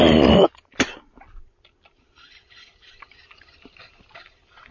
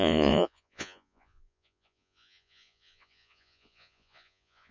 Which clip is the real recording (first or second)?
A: first